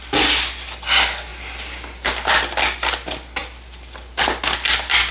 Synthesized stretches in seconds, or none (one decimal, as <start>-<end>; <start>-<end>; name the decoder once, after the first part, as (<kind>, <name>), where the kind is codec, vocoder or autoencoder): none